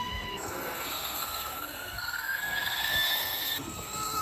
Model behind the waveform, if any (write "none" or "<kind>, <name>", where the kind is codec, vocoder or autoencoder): codec, SNAC